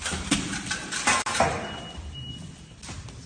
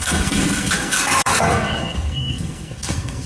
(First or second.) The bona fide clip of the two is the first